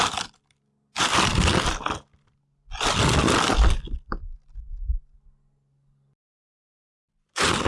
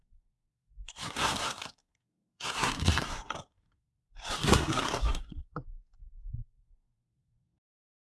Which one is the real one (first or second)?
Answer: first